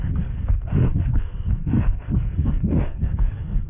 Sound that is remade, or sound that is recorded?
remade